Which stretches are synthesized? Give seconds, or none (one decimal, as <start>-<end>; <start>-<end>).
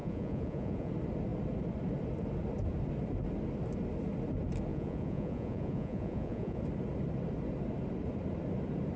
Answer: 0.0-0.9; 4.7-6.6